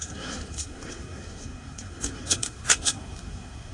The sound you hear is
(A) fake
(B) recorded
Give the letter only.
A